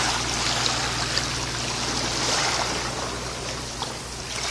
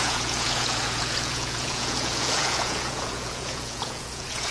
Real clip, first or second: first